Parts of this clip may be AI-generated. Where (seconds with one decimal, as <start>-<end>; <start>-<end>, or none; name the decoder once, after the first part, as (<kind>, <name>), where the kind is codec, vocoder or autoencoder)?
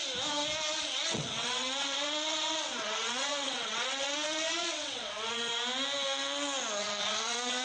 0.8-5.5 (vocoder, WaveNeXt); 6.8-7.6